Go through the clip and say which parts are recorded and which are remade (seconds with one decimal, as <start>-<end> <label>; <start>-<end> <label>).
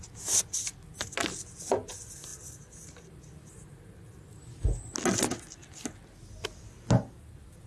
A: 0.0-7.7 recorded